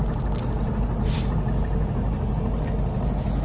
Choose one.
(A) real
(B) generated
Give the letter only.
A